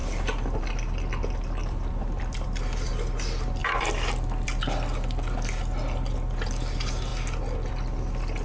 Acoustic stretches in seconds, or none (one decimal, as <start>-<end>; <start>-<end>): 0.0-1.6; 2.9-3.6; 4.6-8.4